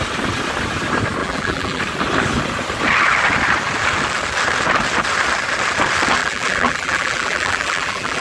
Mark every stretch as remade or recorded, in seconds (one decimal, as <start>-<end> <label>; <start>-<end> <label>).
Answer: 0.0-1.2 recorded; 1.2-1.8 remade; 1.8-6.2 recorded; 6.2-8.2 remade